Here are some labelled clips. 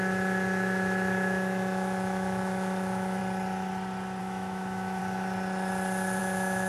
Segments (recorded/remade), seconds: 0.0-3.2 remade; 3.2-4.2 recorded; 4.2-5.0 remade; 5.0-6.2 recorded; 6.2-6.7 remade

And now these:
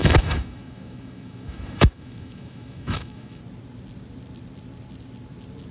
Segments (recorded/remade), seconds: 0.0-3.4 remade; 3.4-5.7 recorded

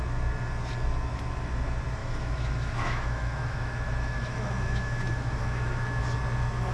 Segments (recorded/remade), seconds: 0.0-2.0 recorded; 2.0-6.0 remade; 6.0-6.7 recorded